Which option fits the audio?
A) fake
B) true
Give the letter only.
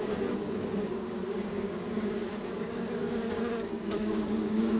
A